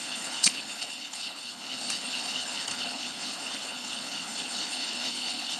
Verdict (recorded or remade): remade